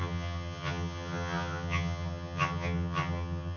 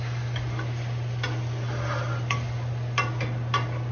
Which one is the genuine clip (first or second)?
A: second